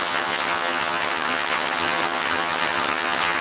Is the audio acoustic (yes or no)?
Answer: no